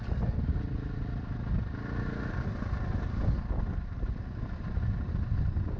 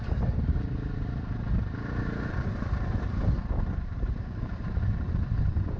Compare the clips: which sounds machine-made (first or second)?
second